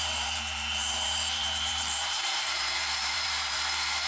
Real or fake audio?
fake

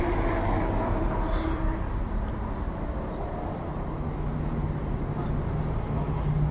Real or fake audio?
real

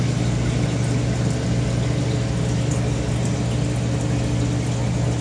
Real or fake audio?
real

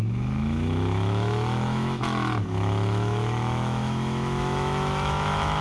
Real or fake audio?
fake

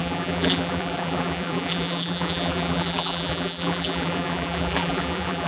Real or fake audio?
fake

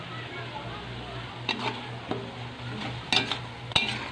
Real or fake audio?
real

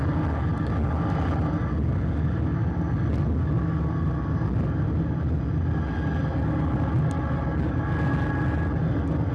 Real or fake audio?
real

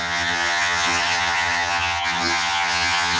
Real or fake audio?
fake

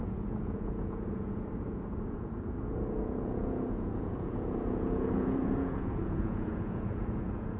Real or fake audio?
fake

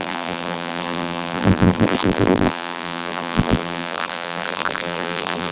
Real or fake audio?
fake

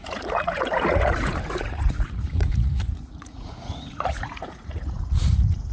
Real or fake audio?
fake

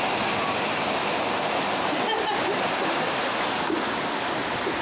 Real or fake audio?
real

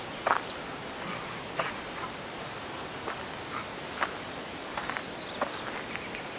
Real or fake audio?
real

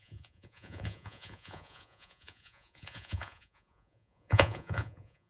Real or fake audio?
fake